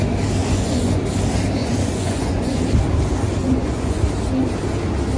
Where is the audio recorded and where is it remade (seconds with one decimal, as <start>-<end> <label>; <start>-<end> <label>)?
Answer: 0.0-0.4 recorded; 0.4-1.0 remade; 1.0-1.6 recorded; 1.6-2.6 remade; 2.6-3.4 recorded; 3.4-4.0 remade; 4.0-5.2 recorded